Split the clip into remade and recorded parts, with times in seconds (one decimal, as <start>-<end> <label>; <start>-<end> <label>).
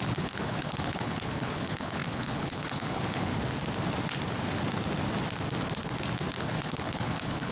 0.0-3.3 remade; 3.3-6.4 recorded; 6.4-7.5 remade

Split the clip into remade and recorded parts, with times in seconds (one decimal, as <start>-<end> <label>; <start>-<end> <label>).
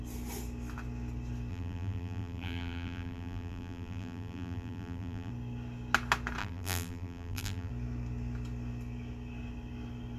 0.0-1.5 recorded; 1.5-5.3 remade; 5.3-6.4 recorded; 6.4-7.7 remade; 7.7-10.2 recorded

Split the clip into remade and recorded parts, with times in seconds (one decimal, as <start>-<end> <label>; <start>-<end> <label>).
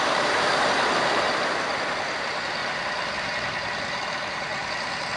0.0-5.2 remade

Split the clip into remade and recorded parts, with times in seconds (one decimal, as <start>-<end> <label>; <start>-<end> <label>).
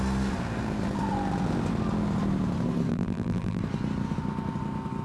0.0-2.9 recorded; 2.9-3.6 remade; 3.6-5.0 recorded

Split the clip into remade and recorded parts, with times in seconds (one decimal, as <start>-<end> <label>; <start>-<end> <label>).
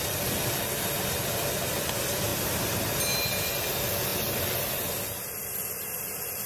0.0-2.3 recorded; 2.3-3.6 remade; 3.6-6.5 recorded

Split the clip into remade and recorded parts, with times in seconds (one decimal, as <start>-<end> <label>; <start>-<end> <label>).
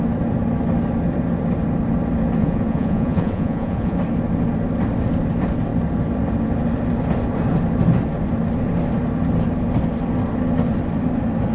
0.0-2.4 recorded; 2.4-4.0 remade; 4.0-11.5 recorded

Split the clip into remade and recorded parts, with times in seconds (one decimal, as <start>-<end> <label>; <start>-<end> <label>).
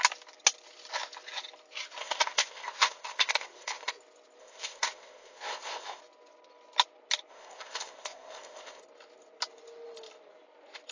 0.0-2.0 recorded; 2.0-3.9 remade; 3.9-4.4 recorded; 4.4-6.0 remade; 6.0-7.3 recorded; 7.3-8.8 remade; 8.8-10.9 recorded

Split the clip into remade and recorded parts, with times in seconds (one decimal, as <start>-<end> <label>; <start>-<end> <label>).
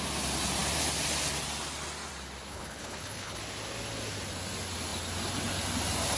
0.0-2.5 recorded; 2.5-3.4 remade; 3.4-6.2 recorded